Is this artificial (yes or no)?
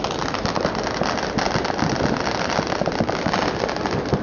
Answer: no